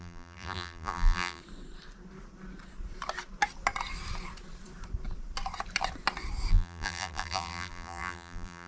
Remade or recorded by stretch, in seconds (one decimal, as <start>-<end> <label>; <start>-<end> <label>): 0.0-1.4 remade; 1.4-6.5 recorded; 6.5-8.7 remade